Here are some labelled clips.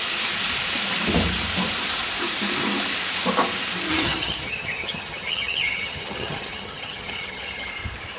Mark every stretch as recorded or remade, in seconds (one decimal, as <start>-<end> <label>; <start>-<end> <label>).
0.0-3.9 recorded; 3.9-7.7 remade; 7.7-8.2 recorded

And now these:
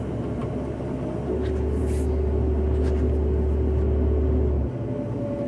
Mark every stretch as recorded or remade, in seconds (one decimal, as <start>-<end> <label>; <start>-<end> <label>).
0.0-5.5 recorded

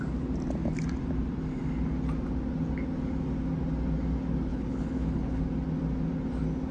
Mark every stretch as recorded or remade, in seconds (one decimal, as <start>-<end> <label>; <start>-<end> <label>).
0.0-4.5 recorded; 4.5-5.4 remade; 5.4-6.7 recorded

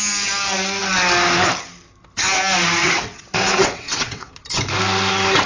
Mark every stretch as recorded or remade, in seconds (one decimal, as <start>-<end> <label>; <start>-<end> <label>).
0.0-2.8 recorded; 2.8-4.3 remade; 4.3-5.5 recorded

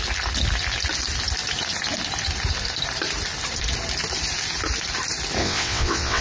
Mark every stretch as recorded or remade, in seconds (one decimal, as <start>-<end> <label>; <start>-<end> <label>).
0.0-5.4 recorded; 5.4-6.2 remade

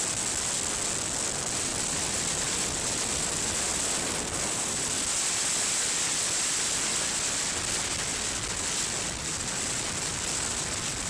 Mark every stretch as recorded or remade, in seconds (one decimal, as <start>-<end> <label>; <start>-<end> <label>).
0.0-1.7 recorded; 1.7-5.0 remade; 5.0-11.1 recorded